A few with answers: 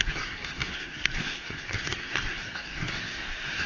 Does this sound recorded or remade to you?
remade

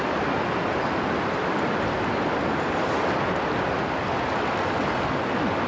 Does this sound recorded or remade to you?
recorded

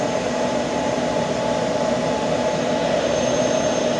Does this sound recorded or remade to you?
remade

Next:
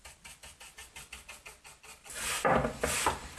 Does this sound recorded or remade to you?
recorded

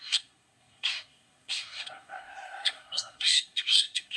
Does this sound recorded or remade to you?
remade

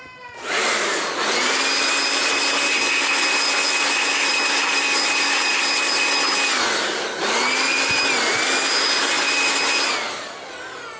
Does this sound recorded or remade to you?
recorded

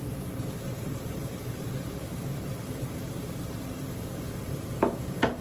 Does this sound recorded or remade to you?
remade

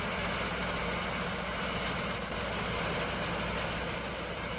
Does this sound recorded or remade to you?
recorded